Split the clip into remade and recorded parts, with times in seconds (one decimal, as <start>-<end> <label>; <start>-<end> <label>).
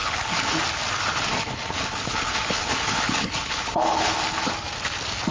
0.0-0.6 remade; 0.6-1.3 recorded; 1.3-4.5 remade; 4.5-5.3 recorded